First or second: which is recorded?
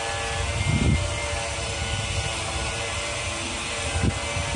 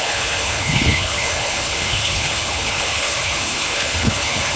first